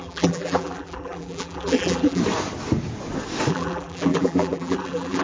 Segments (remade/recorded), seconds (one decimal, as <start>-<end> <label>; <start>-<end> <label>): 0.0-2.2 remade; 2.2-3.5 recorded; 3.5-5.2 remade